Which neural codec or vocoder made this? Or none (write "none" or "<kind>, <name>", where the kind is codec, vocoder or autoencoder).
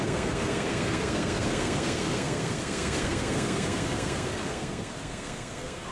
codec, SNAC